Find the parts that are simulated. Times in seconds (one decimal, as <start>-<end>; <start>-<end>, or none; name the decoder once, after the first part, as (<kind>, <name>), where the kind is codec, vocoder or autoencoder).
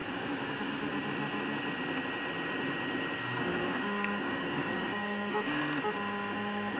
0.0-0.9 (codec, DAC); 3.5-5.6